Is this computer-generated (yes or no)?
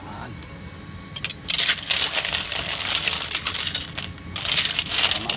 no